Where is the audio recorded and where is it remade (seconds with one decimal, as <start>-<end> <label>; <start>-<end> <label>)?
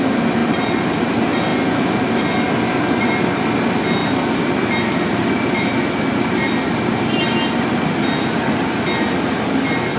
0.0-4.0 recorded; 4.0-9.1 remade; 9.1-10.0 recorded